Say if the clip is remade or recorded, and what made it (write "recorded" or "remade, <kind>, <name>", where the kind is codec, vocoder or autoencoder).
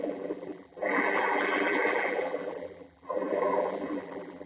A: remade, vocoder, BigVGAN v2